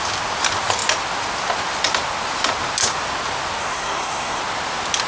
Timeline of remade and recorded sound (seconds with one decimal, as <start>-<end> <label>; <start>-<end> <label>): 0.0-3.6 recorded; 3.6-4.4 remade; 4.4-5.1 recorded